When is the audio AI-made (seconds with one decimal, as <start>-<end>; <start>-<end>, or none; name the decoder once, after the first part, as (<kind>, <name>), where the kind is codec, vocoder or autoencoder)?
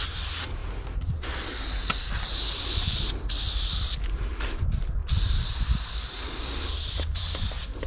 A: 0.0-0.6 (vocoder, BigVGAN v2); 3.8-7.9